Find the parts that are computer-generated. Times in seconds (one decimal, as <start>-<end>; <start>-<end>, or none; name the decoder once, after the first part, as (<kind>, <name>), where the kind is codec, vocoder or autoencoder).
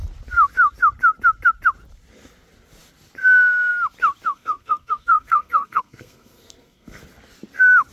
4.3-7.0 (codec, SNAC)